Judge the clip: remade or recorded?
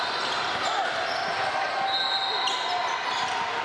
recorded